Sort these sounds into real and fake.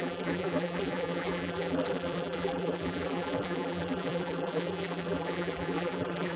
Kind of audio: fake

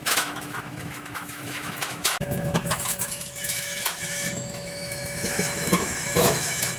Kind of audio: fake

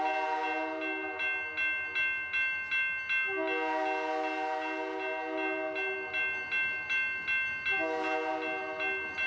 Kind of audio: real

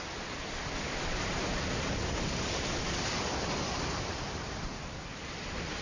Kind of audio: real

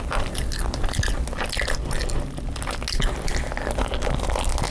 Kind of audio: real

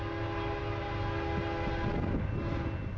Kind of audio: real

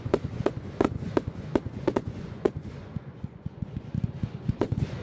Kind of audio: fake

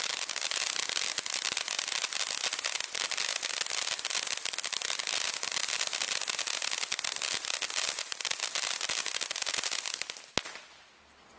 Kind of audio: real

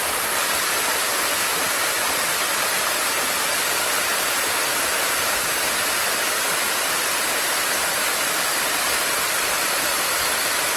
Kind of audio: real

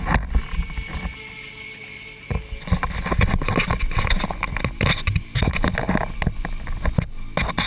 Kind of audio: real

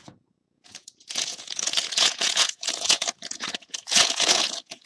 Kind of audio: fake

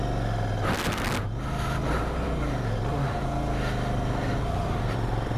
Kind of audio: real